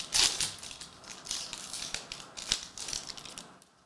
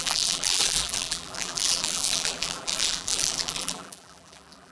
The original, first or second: first